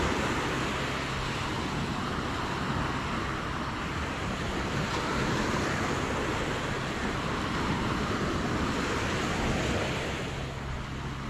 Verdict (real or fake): real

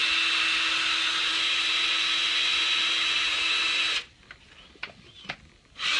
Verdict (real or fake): real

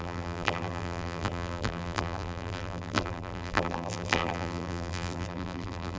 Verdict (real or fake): fake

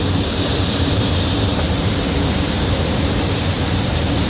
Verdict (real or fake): fake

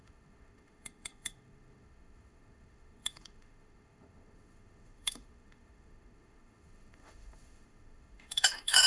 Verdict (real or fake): fake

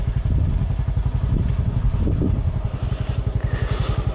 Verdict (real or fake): real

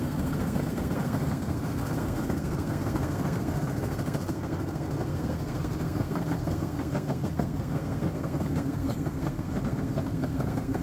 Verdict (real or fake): fake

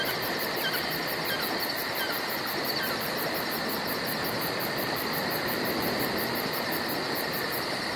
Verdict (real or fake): real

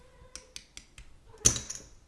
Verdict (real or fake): real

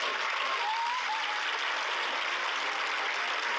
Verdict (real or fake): real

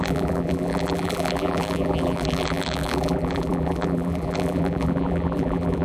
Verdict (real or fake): fake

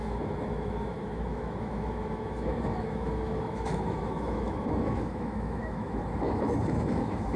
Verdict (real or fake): fake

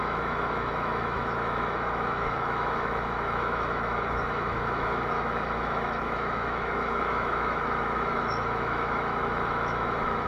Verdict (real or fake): fake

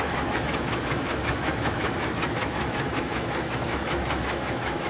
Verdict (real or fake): fake